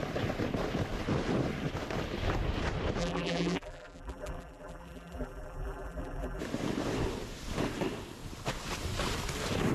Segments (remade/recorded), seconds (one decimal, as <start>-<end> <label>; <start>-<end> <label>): 0.0-3.0 recorded; 3.0-6.4 remade; 6.4-9.7 recorded